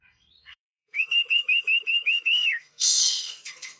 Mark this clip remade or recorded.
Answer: remade